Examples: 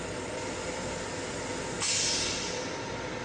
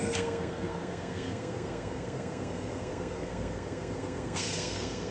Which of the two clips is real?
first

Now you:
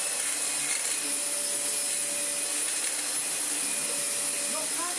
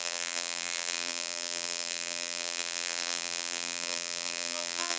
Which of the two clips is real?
first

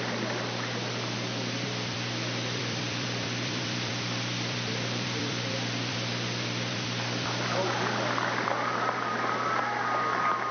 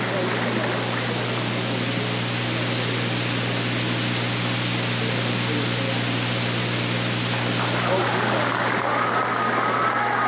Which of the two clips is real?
second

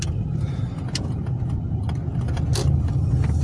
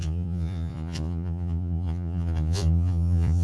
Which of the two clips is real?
first